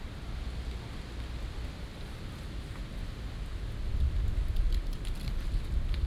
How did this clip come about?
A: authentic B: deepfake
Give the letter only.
A